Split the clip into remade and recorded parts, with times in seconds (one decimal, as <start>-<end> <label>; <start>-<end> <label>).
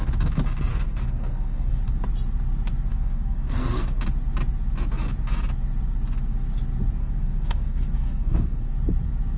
0.0-0.7 recorded; 0.7-1.8 remade; 1.8-2.9 recorded; 2.9-4.0 remade; 4.0-7.0 recorded; 7.0-8.7 remade; 8.7-9.4 recorded